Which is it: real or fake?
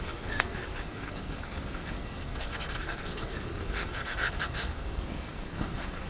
fake